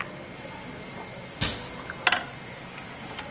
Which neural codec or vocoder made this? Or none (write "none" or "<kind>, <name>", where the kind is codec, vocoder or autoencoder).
none